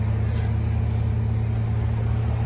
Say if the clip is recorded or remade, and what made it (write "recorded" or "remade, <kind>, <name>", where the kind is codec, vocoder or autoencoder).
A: recorded